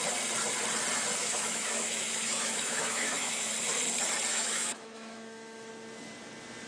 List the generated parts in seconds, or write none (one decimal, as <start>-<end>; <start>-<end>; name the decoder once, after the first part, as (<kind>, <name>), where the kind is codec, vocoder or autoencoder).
1.2-3.5 (autoencoder, DAC-VAE); 4.3-5.7